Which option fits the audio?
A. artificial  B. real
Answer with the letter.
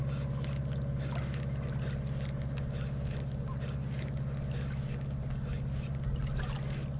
B